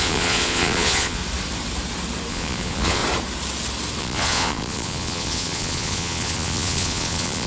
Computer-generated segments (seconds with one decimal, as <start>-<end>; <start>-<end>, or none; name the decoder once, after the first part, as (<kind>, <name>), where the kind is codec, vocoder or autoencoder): 0.0-1.2 (vocoder, Vocos); 2.3-3.0; 4.0-7.5